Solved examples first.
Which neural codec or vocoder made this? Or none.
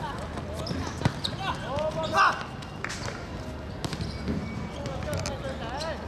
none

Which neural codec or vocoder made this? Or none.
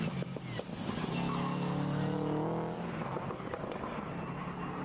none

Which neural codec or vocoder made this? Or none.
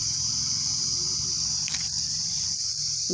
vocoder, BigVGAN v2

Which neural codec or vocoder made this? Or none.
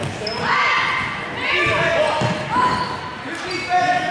none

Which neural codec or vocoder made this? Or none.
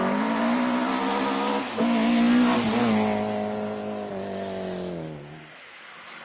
none